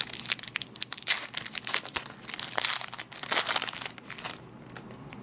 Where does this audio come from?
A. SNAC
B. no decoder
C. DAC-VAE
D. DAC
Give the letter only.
B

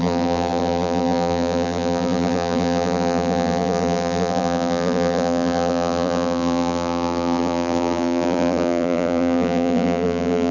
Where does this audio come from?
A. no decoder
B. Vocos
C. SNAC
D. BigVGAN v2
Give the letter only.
D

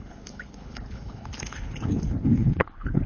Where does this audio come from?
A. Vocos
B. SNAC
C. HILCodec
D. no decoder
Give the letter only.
C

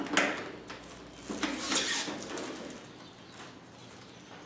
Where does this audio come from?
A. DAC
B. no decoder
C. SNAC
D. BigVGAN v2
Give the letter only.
B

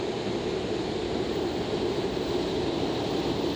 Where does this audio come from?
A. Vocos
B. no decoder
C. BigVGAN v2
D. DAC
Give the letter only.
B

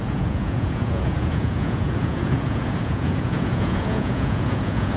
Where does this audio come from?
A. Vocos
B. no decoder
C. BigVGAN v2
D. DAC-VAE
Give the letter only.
A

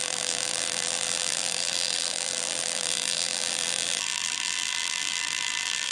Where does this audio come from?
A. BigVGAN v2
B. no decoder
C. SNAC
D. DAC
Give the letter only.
A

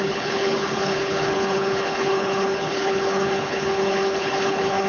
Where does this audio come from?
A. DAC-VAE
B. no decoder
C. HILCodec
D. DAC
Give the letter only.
C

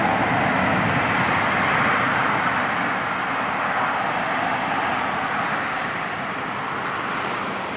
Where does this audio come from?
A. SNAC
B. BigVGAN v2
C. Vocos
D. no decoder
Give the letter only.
D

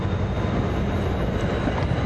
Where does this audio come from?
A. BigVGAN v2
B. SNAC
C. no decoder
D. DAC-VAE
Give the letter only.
C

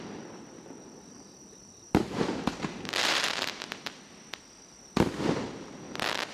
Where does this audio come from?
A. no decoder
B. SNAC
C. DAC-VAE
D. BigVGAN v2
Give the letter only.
A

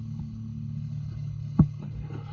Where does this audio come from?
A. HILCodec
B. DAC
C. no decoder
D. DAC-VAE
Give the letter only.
A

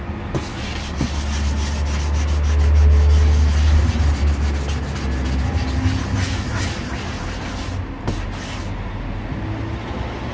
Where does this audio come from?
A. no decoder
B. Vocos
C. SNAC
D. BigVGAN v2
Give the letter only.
A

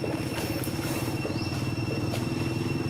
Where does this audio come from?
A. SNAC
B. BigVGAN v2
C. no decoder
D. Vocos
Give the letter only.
C